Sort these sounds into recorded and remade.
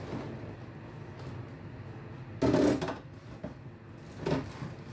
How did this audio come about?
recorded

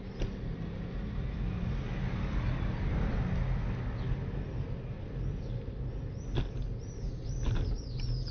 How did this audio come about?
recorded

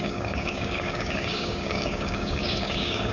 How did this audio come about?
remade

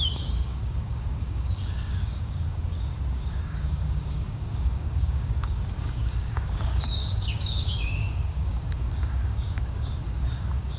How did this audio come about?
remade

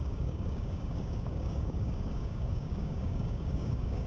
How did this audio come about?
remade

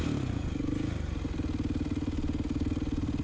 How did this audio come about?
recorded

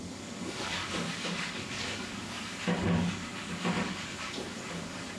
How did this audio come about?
remade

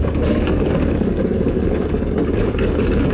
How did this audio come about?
remade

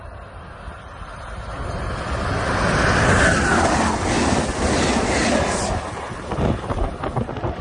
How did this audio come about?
recorded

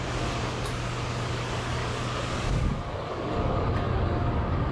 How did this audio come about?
remade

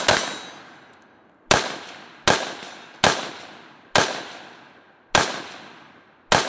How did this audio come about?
recorded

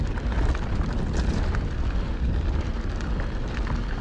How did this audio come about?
recorded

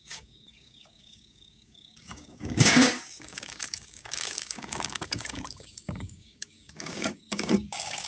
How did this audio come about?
remade